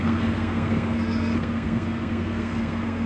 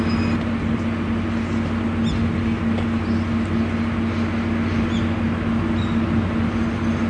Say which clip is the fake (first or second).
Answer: first